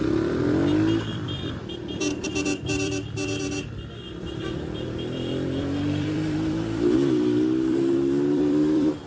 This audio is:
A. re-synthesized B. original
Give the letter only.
A